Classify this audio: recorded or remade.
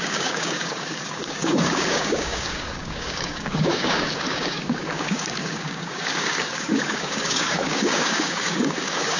remade